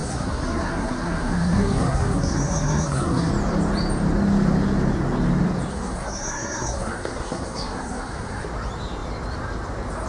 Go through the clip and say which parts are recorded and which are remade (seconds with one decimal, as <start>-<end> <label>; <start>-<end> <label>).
0.0-3.3 remade; 3.3-5.7 recorded; 5.7-8.4 remade; 8.4-10.1 recorded